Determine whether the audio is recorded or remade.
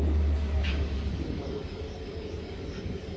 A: remade